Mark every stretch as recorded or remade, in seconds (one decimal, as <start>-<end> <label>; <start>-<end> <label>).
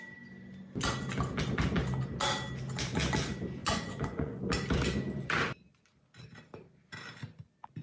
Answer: 0.0-3.6 recorded; 3.6-4.4 remade; 4.4-7.8 recorded